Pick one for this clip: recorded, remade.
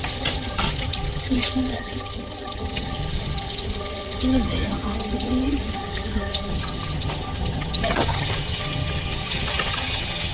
remade